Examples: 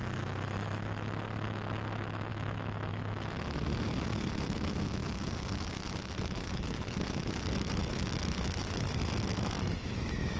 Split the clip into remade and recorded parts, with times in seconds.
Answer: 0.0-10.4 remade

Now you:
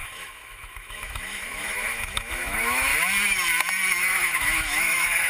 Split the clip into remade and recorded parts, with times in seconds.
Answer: 0.0-2.9 remade; 2.9-4.0 recorded; 4.0-5.3 remade

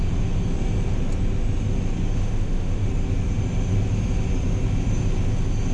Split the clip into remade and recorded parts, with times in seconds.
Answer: 0.0-2.2 recorded; 2.2-2.9 remade; 2.9-5.7 recorded

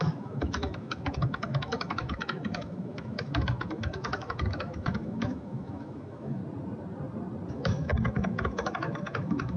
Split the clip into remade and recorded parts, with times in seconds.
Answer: 0.0-6.4 remade; 6.4-7.5 recorded; 7.5-9.6 remade

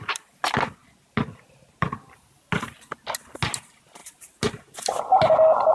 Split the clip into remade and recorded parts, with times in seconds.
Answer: 0.0-5.7 recorded

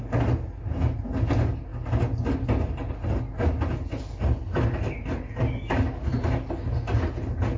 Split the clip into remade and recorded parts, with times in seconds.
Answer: 0.0-7.6 recorded

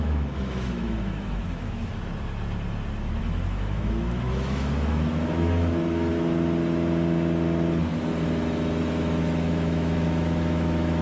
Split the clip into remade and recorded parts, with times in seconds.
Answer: 0.0-1.8 remade; 1.8-3.2 recorded; 3.2-6.1 remade; 6.1-8.8 recorded; 8.8-11.0 remade

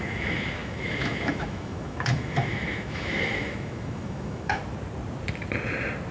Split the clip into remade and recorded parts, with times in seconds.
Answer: 0.0-4.6 remade; 4.6-6.1 recorded